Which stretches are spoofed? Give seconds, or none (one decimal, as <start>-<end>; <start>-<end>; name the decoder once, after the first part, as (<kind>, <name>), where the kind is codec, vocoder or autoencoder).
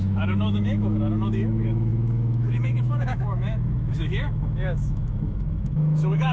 0.0-6.3 (autoencoder, DAC-VAE)